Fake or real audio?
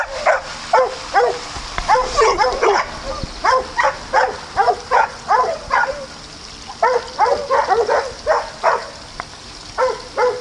real